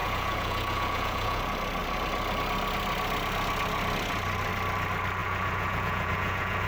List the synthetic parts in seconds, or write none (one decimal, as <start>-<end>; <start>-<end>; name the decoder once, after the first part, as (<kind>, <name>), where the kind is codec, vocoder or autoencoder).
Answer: 0.0-1.4 (vocoder, Vocos); 5.2-6.7